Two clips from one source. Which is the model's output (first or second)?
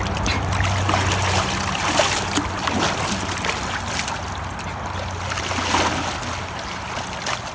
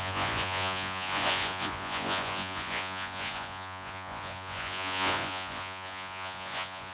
second